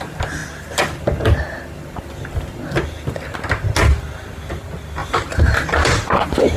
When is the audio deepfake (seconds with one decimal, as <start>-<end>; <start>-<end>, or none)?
5.0-6.6